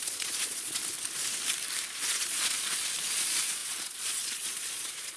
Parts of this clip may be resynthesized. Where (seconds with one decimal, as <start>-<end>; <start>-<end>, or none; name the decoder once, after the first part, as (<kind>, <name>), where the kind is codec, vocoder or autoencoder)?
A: 0.0-0.8 (vocoder, Vocos); 1.9-5.2